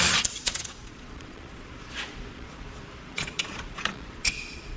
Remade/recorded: remade